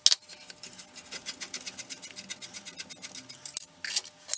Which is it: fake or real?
real